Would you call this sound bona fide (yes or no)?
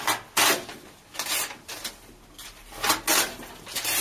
yes